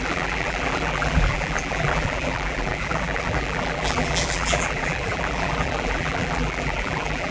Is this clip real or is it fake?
fake